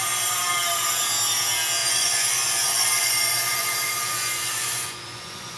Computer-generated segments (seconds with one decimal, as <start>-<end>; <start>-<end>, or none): 1.8-5.6